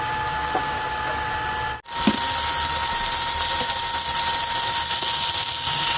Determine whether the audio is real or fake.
real